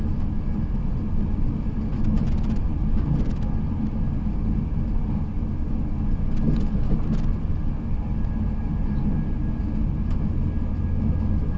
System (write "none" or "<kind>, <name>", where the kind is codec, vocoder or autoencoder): none